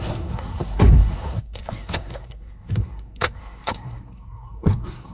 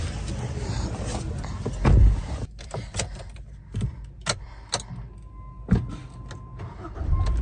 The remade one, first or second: first